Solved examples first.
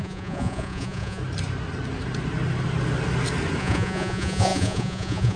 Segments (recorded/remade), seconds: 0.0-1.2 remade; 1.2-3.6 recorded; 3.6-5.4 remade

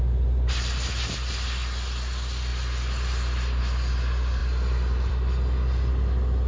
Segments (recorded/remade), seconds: 0.0-6.5 recorded

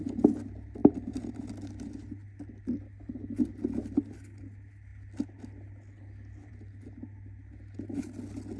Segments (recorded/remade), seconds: 0.0-0.8 recorded; 0.8-1.5 remade; 1.5-8.6 recorded

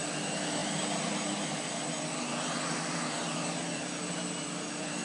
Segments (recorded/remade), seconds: 0.0-5.0 recorded

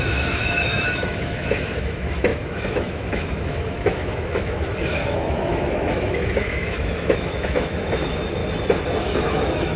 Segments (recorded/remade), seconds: 0.0-8.4 remade; 8.4-9.0 recorded; 9.0-9.8 remade

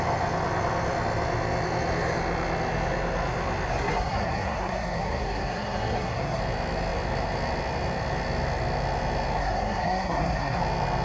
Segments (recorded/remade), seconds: 0.0-3.7 recorded; 3.7-6.4 remade; 6.4-9.4 recorded; 9.4-10.6 remade; 10.6-11.0 recorded

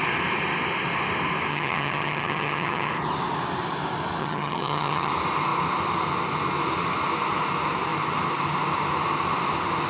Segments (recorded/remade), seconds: 0.0-1.5 recorded; 1.5-2.9 remade; 2.9-4.2 recorded; 4.2-5.1 remade; 5.1-9.9 recorded

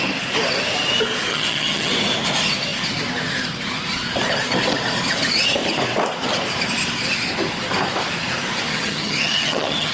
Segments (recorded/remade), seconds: 0.0-1.3 recorded; 1.3-1.9 remade; 1.9-8.7 recorded; 8.7-9.9 remade